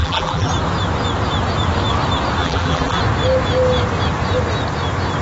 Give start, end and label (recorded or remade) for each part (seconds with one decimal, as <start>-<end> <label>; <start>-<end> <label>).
0.0-0.5 remade; 0.5-2.4 recorded; 2.4-3.0 remade; 3.0-5.2 recorded